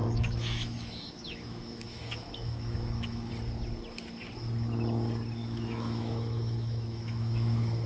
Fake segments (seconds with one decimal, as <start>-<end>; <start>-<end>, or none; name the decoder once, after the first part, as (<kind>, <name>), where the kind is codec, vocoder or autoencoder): 0.0-3.3 (autoencoder, DAC-VAE); 5.4-7.9